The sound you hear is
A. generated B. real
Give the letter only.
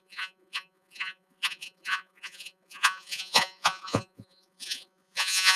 A